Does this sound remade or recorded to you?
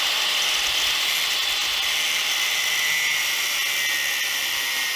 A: recorded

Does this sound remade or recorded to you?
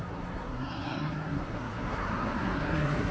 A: remade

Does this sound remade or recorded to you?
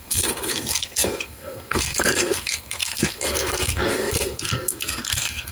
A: remade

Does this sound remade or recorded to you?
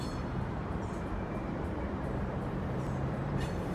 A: remade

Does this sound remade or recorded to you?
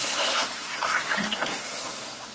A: remade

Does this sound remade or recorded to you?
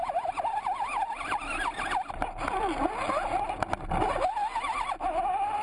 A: recorded